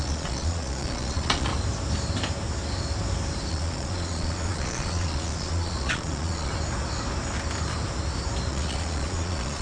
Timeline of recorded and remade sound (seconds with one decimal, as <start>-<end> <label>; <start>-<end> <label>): 0.0-1.5 remade; 1.5-3.5 recorded; 3.5-6.5 remade; 6.5-8.5 recorded; 8.5-9.6 remade